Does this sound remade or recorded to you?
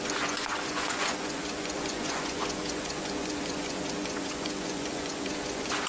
remade